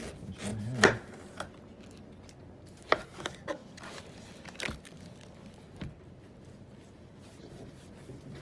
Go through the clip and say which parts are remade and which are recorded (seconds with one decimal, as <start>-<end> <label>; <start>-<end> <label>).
0.0-3.6 recorded; 3.6-7.9 remade; 7.9-8.4 recorded